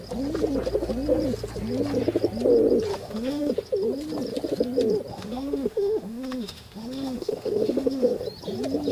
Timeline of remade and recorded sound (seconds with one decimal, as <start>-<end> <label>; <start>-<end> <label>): 0.0-2.9 recorded; 2.9-3.5 remade; 3.5-5.1 recorded; 5.1-8.2 remade; 8.2-8.9 recorded